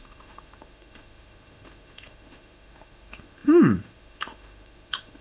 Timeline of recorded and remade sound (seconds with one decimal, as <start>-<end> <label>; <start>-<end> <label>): 0.0-5.2 remade